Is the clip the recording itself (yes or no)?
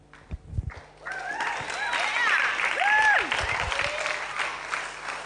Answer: yes